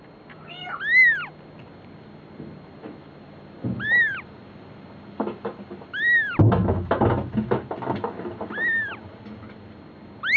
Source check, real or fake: real